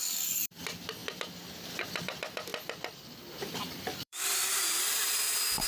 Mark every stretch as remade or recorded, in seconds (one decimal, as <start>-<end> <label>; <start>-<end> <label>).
0.0-1.0 remade; 1.0-2.0 recorded; 2.0-2.5 remade; 2.5-3.8 recorded; 3.8-5.7 remade